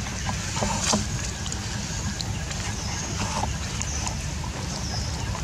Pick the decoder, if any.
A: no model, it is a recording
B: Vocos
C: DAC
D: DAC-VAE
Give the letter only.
A